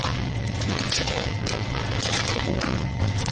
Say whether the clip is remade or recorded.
remade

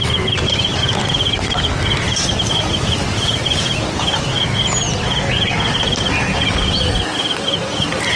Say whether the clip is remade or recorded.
recorded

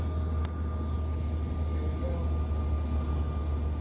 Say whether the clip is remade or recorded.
recorded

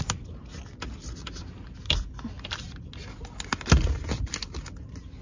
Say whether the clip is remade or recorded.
recorded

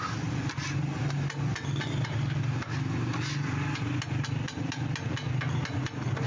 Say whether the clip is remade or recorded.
recorded